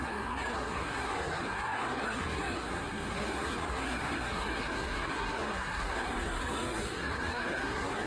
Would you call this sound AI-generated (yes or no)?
yes